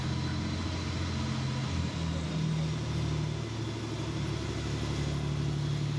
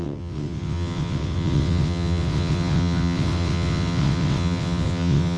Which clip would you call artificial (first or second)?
second